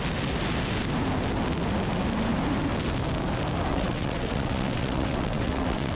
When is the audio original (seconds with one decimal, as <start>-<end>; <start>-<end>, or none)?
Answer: 0.0-3.7